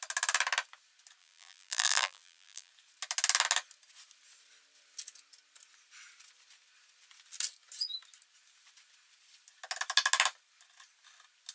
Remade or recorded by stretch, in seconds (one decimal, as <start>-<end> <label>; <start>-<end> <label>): 0.0-1.2 recorded; 1.2-2.7 remade; 2.7-11.5 recorded